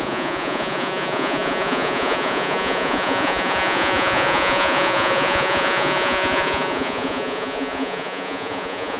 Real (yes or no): no